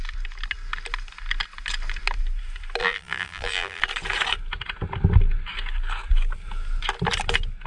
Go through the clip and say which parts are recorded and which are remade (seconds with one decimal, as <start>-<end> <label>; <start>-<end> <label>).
0.0-2.8 recorded; 2.8-3.8 remade; 3.8-7.7 recorded